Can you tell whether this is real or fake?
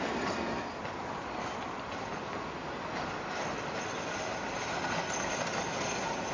real